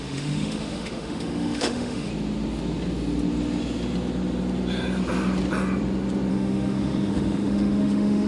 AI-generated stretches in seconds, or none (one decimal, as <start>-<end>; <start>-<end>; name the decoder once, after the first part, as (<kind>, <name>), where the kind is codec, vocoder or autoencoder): 0.0-2.1 (autoencoder, DAC-VAE); 6.3-8.3